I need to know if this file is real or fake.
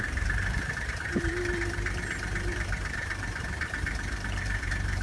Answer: fake